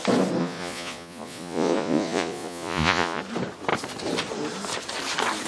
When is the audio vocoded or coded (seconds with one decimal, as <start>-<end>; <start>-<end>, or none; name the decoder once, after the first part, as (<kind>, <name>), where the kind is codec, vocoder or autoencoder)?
0.4-3.2 (vocoder, Vocos)